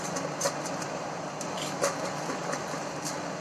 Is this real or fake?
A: real